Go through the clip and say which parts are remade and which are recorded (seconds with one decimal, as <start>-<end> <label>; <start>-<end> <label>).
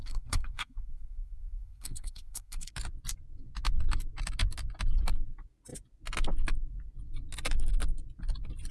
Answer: 0.0-2.7 remade; 2.7-8.7 recorded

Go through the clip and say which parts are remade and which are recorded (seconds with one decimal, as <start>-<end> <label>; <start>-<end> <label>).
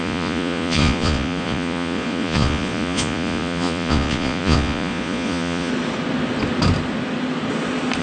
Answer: 0.0-5.7 remade; 5.7-8.0 recorded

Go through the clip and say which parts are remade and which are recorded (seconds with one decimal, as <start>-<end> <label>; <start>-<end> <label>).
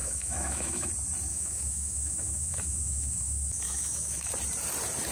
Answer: 0.0-0.9 remade; 0.9-1.3 recorded; 1.3-4.3 remade; 4.3-5.1 recorded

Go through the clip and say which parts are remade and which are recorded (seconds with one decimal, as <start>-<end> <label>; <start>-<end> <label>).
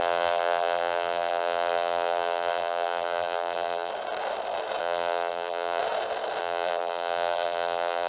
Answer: 0.0-3.9 remade; 3.9-4.8 recorded; 4.8-5.8 remade; 5.8-6.4 recorded; 6.4-8.1 remade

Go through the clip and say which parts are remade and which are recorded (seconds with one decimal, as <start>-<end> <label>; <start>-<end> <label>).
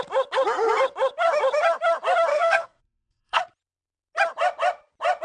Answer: 0.0-2.3 recorded; 2.3-3.4 remade; 3.4-5.2 recorded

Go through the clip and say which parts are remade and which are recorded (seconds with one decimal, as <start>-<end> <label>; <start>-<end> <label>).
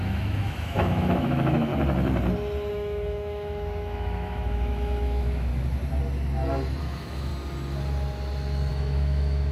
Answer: 0.0-1.7 remade; 1.7-2.7 recorded; 2.7-5.5 remade; 5.5-6.8 recorded; 6.8-7.3 remade; 7.3-8.7 recorded; 8.7-9.5 remade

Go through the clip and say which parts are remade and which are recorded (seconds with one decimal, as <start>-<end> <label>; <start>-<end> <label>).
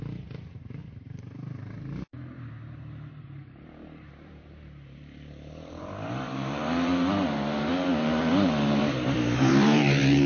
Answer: 0.0-0.8 remade; 0.8-3.2 recorded; 3.2-10.3 remade